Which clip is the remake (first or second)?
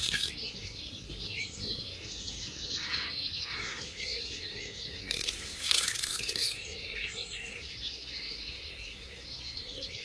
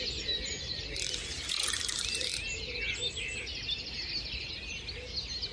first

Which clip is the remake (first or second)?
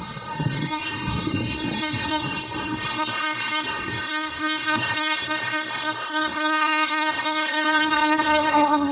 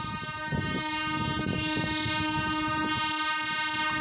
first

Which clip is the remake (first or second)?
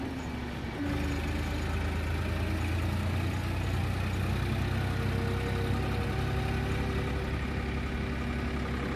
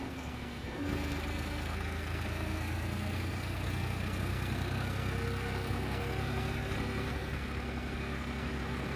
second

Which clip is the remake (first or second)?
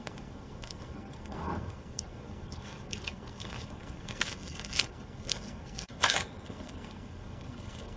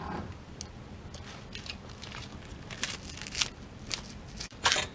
first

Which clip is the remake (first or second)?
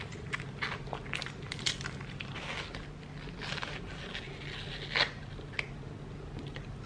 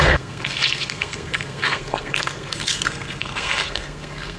second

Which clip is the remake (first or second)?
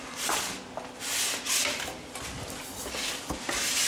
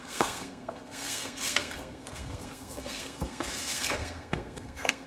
second